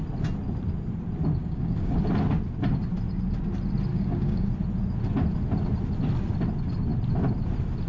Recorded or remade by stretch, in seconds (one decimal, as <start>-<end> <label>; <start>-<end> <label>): 0.0-1.4 recorded; 1.4-2.0 remade; 2.0-3.9 recorded; 3.9-4.5 remade; 4.5-7.9 recorded